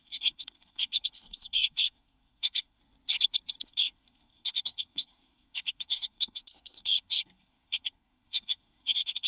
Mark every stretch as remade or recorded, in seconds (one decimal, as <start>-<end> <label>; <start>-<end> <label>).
0.0-2.8 remade; 2.8-3.6 recorded; 3.6-9.3 remade

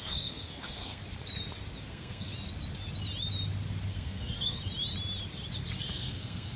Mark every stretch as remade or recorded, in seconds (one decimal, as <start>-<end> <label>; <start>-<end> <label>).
0.0-1.0 remade; 1.0-1.9 recorded; 1.9-2.3 remade; 2.3-3.9 recorded; 3.9-4.6 remade; 4.6-5.9 recorded; 5.9-6.6 remade

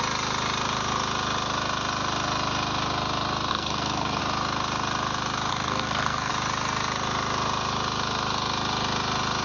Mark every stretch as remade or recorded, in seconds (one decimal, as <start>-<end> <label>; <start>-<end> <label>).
0.0-3.5 recorded; 3.5-4.2 remade; 4.2-5.5 recorded; 5.5-6.3 remade; 6.3-9.4 recorded

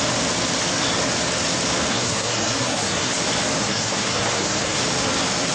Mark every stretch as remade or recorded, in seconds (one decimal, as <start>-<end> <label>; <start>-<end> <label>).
0.0-1.9 recorded; 1.9-3.1 remade; 3.1-3.6 recorded; 3.6-4.8 remade; 4.8-5.5 recorded